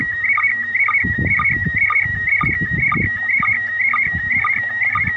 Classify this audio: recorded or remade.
recorded